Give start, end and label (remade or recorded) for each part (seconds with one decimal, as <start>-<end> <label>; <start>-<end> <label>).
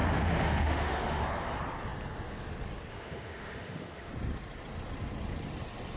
0.0-1.2 remade; 1.2-2.9 recorded; 2.9-4.1 remade; 4.1-6.0 recorded